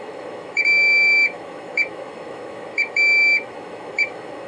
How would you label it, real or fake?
fake